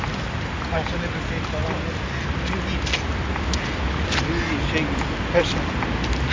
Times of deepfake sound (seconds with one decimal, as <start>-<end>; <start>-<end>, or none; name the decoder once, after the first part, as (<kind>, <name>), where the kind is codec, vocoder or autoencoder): none